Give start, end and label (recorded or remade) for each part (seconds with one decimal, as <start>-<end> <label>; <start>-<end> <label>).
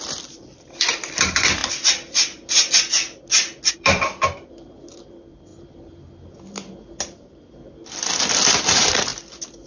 0.0-1.6 remade; 1.6-3.7 recorded; 3.7-5.5 remade; 5.5-8.5 recorded; 8.5-9.1 remade; 9.1-9.7 recorded